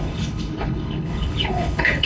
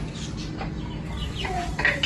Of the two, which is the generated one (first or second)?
first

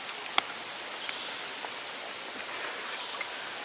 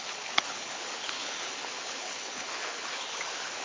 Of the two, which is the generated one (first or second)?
second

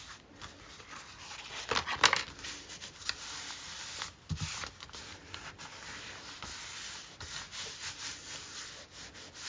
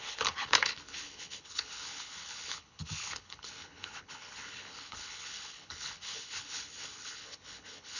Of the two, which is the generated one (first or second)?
second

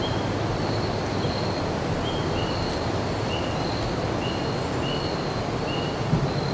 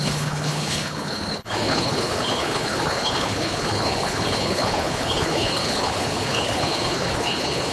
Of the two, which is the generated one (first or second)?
second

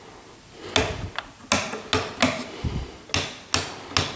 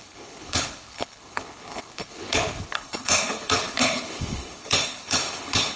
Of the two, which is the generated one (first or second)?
second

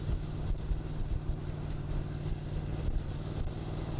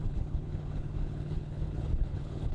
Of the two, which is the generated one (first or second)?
second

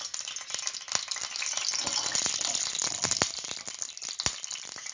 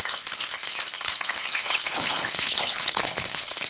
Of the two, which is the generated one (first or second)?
second